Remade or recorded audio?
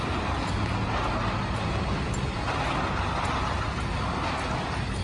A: recorded